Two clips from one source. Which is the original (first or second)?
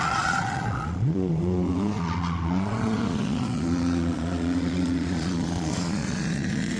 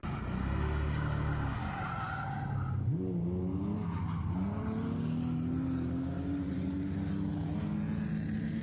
second